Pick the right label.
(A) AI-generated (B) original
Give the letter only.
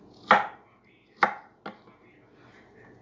B